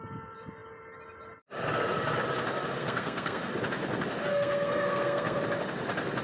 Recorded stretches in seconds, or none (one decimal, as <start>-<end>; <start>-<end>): 0.0-2.8; 3.4-4.3; 5.4-6.2